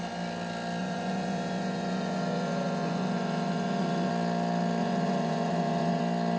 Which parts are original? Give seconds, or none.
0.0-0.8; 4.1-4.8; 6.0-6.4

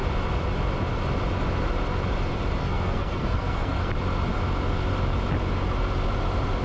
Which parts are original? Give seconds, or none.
0.0-2.6; 3.9-6.6

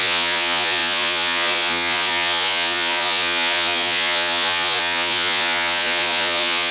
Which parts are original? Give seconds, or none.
none

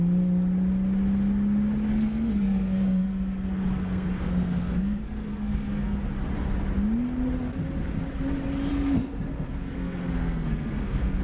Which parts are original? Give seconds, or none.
0.0-1.9; 6.0-8.7

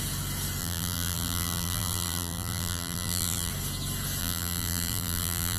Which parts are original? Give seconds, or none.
0.0-0.6; 3.5-4.2